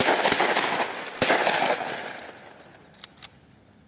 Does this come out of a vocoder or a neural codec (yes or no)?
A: no